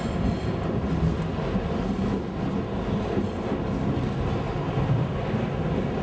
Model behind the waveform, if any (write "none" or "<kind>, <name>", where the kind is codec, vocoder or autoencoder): none